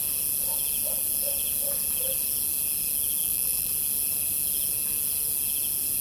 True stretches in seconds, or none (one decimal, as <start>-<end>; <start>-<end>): 0.0-3.2; 3.7-6.0